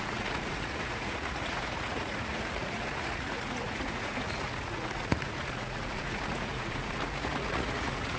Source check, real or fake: fake